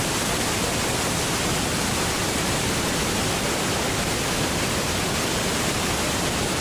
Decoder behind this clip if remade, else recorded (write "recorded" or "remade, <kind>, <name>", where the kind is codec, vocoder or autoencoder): recorded